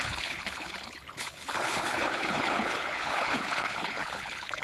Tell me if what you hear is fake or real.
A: fake